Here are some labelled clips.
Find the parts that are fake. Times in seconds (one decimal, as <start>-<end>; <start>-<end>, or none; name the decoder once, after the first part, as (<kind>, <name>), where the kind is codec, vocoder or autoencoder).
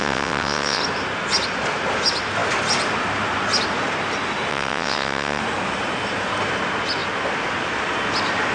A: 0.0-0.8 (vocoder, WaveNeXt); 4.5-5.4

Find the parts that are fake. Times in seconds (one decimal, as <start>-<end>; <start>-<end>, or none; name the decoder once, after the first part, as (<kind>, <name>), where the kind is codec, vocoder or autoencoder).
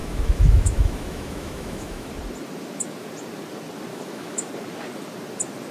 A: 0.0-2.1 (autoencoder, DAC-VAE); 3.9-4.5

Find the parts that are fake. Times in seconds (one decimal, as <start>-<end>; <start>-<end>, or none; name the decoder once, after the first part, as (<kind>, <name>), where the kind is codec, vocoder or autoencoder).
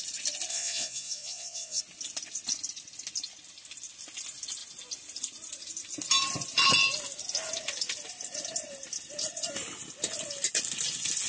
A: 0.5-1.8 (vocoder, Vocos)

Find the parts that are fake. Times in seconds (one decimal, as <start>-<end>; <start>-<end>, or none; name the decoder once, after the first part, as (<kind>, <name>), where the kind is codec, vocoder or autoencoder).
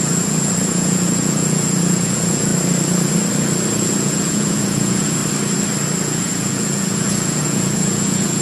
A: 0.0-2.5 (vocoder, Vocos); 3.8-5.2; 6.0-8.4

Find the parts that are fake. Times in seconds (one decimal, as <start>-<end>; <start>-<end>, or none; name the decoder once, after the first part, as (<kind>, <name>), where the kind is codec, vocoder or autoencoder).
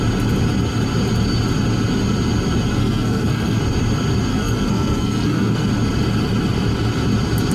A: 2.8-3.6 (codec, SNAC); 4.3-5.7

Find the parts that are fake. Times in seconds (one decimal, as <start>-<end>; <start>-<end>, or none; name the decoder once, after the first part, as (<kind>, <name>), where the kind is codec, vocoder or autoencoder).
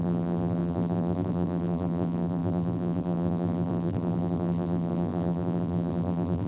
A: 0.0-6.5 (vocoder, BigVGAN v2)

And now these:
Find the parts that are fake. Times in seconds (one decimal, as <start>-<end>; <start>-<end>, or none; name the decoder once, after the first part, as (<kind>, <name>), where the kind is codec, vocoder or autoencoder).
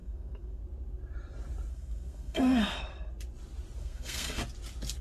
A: 0.0-0.6 (codec, SNAC); 1.7-3.1; 3.8-4.4